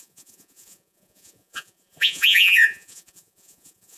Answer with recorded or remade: remade